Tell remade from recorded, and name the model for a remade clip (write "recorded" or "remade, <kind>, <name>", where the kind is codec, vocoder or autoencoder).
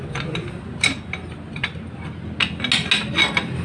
recorded